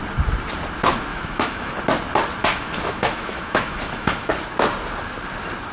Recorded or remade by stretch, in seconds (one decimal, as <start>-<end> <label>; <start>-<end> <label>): 0.0-1.1 recorded; 1.1-1.7 remade; 1.7-2.4 recorded; 2.4-4.3 remade; 4.3-5.7 recorded